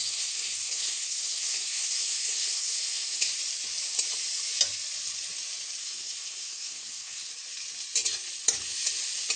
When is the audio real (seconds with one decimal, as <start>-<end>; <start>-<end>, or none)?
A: 3.3-5.8; 7.3-9.4